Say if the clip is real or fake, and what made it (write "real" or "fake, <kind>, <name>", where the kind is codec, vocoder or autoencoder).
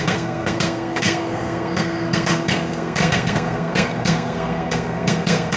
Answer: fake, codec, SNAC